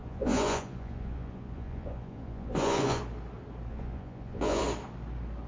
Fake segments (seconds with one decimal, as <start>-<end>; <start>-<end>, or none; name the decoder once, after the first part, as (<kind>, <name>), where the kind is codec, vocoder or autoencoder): 0.0-3.0 (vocoder, Vocos); 3.7-4.6